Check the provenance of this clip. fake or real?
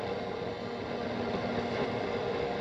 real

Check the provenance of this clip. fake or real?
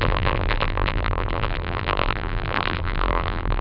fake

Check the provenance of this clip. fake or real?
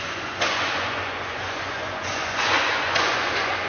fake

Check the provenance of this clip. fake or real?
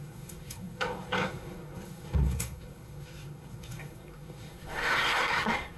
fake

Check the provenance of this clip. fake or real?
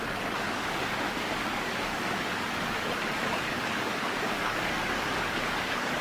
fake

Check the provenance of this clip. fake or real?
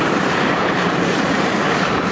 fake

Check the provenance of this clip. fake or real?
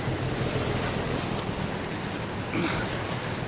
real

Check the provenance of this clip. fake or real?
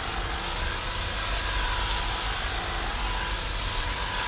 real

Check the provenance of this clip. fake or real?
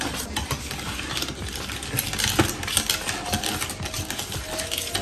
real